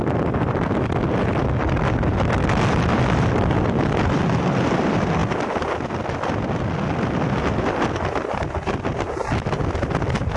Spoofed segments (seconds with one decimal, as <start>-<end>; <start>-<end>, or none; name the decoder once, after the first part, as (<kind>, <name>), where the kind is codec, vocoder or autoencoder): none